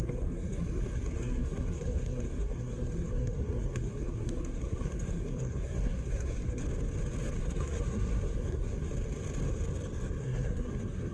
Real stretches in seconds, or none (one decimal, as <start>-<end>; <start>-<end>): 6.6-7.4; 8.9-10.2

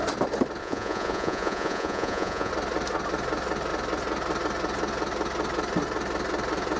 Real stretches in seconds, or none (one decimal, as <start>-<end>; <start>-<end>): 0.0-0.6; 2.5-6.8

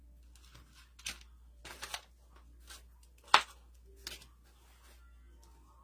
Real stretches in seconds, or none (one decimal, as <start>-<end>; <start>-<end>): 0.0-5.8

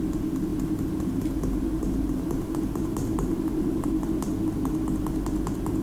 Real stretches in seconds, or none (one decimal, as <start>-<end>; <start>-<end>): 0.0-0.5; 3.9-5.8

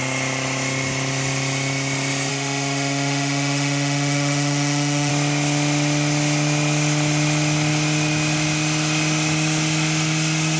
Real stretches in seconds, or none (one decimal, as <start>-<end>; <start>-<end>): 0.0-2.3; 5.1-10.6

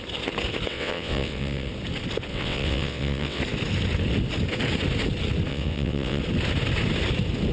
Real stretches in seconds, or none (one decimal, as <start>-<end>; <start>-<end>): 0.0-0.7; 1.7-2.3; 3.4-5.5; 6.2-7.5